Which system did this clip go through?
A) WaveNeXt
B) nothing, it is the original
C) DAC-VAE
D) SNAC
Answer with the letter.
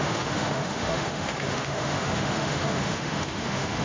C